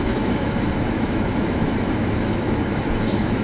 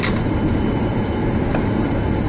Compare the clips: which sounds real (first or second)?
second